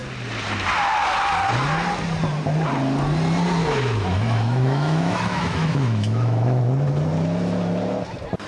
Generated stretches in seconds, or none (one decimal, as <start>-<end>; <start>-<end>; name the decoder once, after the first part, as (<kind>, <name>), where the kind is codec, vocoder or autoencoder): 3.6-6.6 (autoencoder, DAC-VAE)